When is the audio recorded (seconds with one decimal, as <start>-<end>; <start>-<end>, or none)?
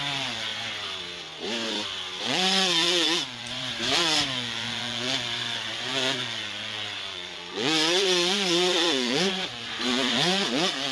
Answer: 0.5-2.2